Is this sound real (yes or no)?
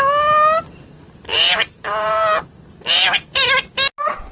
yes